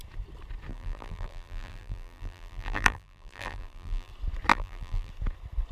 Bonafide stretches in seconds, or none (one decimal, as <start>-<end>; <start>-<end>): 0.0-0.7; 4.1-4.5; 5.1-5.7